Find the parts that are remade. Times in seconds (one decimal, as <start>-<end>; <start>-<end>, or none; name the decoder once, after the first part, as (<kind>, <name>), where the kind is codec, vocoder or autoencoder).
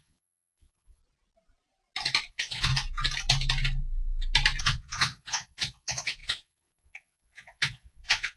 0.0-1.0 (vocoder, Vocos); 2.3-2.7; 4.6-8.4